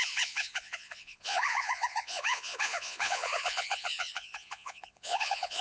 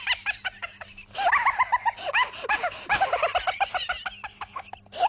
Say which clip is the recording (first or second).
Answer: second